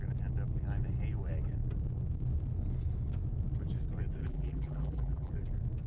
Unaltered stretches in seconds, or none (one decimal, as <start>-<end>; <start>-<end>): 0.0-4.2; 5.3-5.9